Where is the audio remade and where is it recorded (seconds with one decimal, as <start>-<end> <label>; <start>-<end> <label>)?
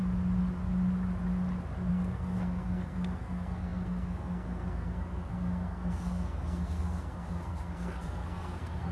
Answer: 0.0-1.9 recorded; 1.9-8.9 remade